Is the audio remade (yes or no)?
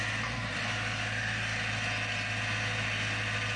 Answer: no